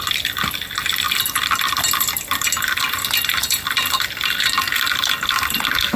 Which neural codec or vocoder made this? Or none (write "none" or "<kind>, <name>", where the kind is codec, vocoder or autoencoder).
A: none